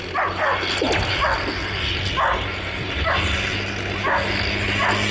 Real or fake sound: real